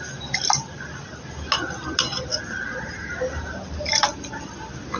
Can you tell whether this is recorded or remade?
recorded